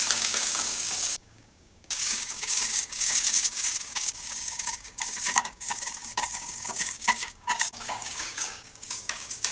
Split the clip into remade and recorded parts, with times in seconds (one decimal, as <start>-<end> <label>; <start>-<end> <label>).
0.0-9.5 remade